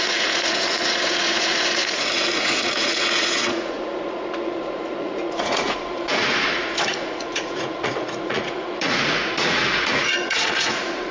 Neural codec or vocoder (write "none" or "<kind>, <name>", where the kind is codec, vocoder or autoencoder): vocoder, Vocos